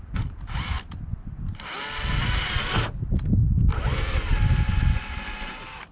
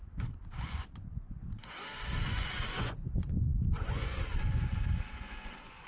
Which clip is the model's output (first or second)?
second